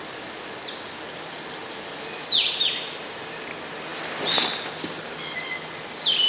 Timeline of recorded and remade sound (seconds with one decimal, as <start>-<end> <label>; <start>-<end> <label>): 0.0-6.3 recorded